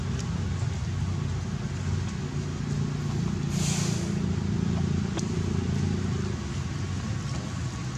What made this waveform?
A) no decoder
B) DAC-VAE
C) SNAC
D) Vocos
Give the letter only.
A